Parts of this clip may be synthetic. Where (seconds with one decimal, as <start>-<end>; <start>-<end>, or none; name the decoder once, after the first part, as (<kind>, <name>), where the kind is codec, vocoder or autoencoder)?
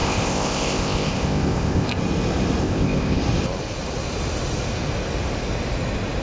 0.0-2.0 (codec, ZipCodec); 2.6-3.2